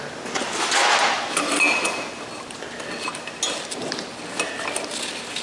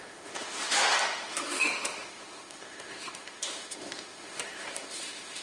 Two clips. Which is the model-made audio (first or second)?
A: second